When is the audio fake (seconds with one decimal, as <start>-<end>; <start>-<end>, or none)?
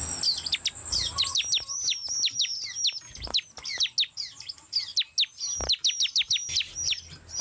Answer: none